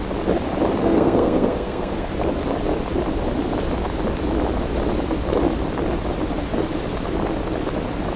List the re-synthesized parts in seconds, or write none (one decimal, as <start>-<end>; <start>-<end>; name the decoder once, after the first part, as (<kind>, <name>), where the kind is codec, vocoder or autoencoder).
0.8-2.1 (codec, SNAC)